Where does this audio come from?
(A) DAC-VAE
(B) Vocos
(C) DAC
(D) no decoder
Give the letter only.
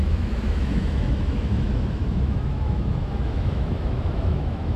A